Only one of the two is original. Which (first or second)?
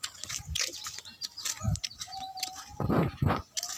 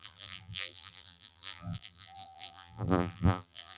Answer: first